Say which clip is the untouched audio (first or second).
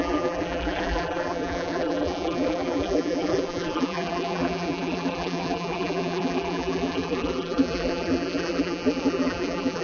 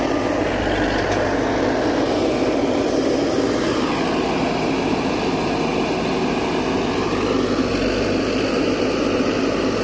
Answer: second